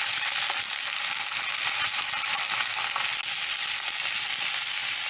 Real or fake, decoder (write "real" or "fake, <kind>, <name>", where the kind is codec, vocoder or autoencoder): real